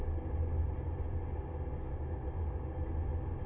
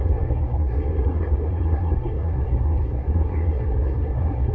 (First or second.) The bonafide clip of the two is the first